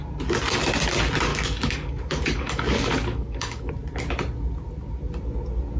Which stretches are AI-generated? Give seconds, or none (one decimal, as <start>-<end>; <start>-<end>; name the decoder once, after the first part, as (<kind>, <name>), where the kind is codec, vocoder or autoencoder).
1.3-3.7 (codec, DAC)